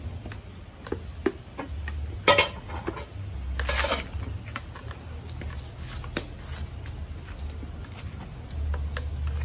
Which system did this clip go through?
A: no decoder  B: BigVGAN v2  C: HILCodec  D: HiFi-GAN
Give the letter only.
A